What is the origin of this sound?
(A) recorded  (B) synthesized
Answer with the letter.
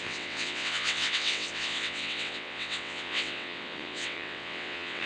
B